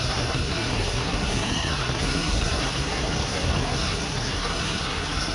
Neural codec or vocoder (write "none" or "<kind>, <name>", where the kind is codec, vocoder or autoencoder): codec, SNAC